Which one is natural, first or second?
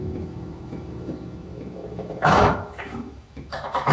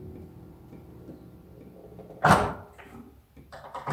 second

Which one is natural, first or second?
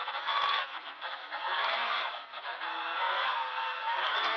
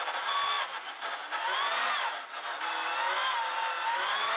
second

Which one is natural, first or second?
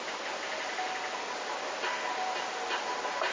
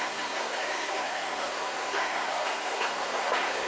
first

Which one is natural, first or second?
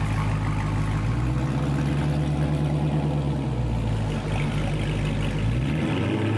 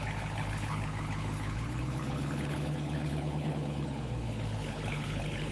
first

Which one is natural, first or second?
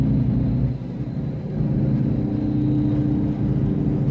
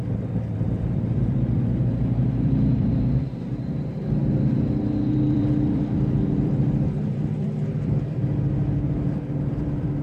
first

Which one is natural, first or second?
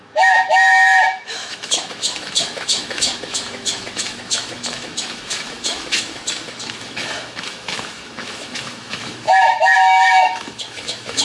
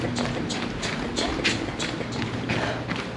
second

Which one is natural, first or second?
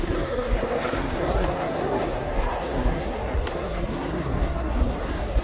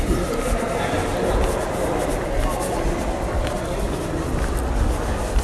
second